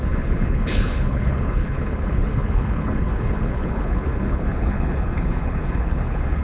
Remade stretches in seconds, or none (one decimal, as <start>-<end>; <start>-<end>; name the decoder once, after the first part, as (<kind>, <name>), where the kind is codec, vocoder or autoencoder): 0.0-6.4 (codec, HILCodec)